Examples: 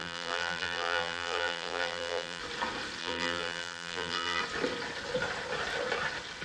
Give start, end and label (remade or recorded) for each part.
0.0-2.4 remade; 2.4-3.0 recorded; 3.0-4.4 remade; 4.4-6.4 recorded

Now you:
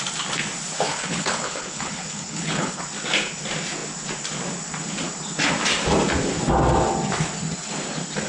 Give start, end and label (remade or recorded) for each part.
0.0-0.9 recorded; 0.9-2.8 remade; 2.8-8.3 recorded

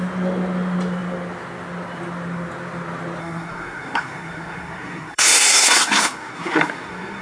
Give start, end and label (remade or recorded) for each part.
0.0-3.2 recorded; 3.2-7.2 remade